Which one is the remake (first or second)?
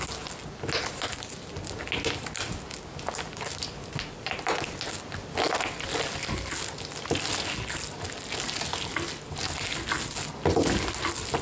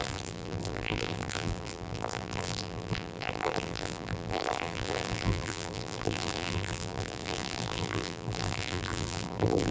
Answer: second